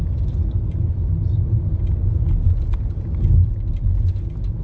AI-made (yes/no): no